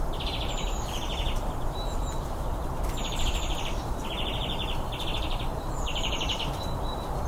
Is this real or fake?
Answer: fake